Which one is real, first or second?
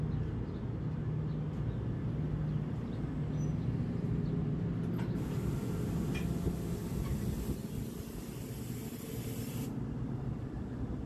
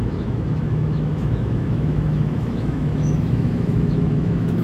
first